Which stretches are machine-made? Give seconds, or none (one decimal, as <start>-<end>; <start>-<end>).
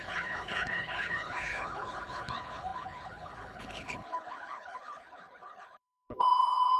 0.0-6.8